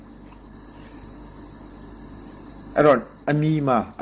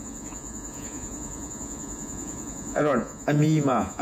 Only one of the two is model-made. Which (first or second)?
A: second